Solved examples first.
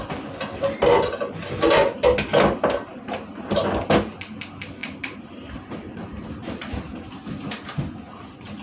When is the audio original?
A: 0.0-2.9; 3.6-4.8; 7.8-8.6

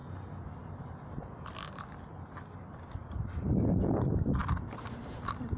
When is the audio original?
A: 0.0-3.1; 4.4-5.0

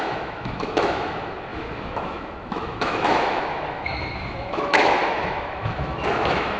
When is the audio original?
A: none

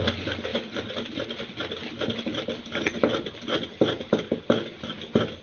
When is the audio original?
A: 0.0-5.4

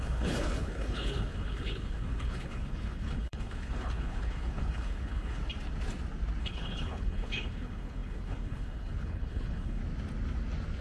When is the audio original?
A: 5.4-6.4; 9.8-10.8

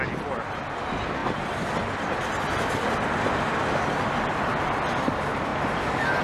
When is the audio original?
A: 0.0-6.2